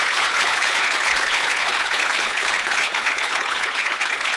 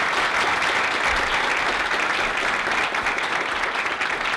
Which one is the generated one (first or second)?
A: first